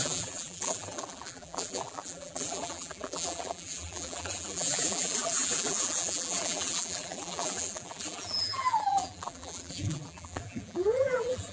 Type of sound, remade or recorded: remade